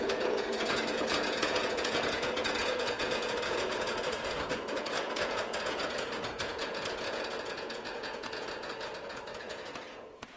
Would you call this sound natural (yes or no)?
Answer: no